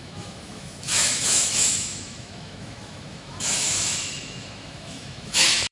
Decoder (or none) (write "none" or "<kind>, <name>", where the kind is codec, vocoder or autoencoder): autoencoder, DAC-VAE